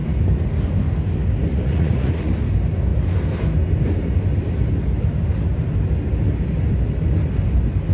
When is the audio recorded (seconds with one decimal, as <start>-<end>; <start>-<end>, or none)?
0.0-1.5; 2.3-7.9